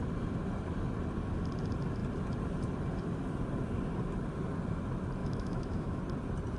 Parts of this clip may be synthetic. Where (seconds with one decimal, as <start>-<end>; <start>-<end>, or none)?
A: 5.2-6.0